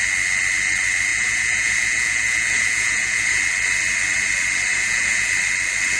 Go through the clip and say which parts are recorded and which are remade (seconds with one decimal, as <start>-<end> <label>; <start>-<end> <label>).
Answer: 0.0-1.1 recorded; 1.1-3.4 remade; 3.4-4.7 recorded; 4.7-5.3 remade; 5.3-6.0 recorded